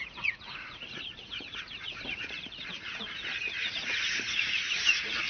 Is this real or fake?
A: fake